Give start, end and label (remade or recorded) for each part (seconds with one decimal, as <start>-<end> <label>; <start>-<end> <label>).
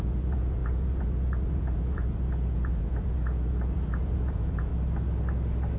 0.0-4.7 remade; 4.7-5.8 recorded